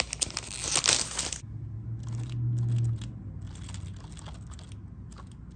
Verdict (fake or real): real